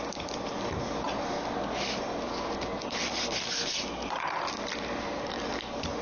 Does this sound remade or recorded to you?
recorded